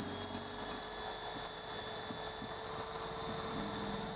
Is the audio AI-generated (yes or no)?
no